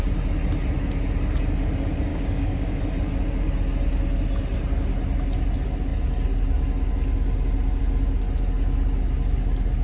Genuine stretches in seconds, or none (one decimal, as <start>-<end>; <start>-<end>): 0.0-2.1; 2.8-9.8